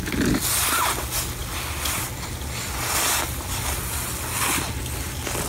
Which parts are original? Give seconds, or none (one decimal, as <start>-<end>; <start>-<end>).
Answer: 0.0-5.5